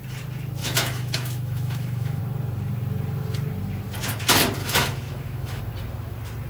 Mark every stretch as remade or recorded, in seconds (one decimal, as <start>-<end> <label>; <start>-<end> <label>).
0.0-0.6 recorded; 0.6-2.2 remade; 2.2-4.6 recorded; 4.6-5.6 remade; 5.6-6.5 recorded